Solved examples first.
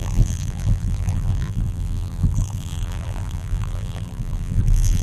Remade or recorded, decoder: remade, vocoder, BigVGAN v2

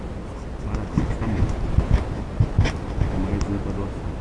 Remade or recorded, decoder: recorded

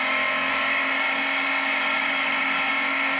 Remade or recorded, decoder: remade, codec, DAC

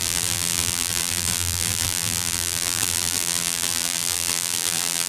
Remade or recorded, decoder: remade, vocoder, BigVGAN v2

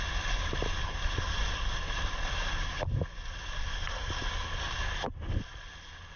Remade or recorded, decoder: recorded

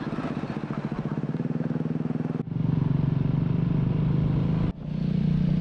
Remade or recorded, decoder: recorded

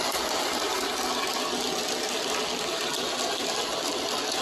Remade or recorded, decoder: recorded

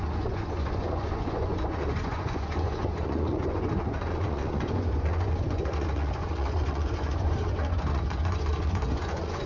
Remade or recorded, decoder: remade, vocoder, Vocos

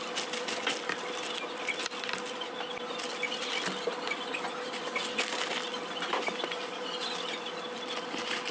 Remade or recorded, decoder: recorded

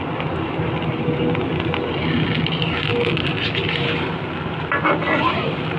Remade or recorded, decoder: recorded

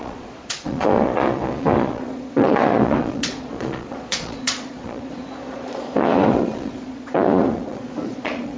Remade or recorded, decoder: remade, vocoder, Vocos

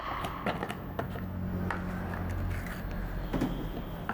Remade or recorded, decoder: recorded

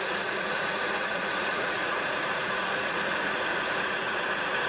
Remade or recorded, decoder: remade, vocoder, Vocos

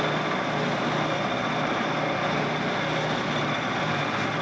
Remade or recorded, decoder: remade, vocoder, BigVGAN v2